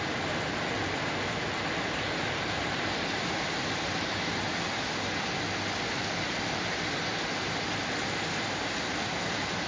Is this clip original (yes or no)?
yes